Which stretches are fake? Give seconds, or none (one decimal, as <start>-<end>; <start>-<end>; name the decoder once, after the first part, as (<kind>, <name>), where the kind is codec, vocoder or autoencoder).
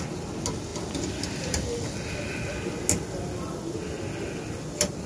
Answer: none